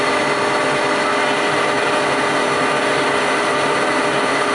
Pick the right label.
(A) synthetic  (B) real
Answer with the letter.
B